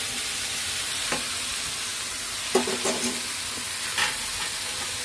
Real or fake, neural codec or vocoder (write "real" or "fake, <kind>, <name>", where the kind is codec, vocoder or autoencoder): real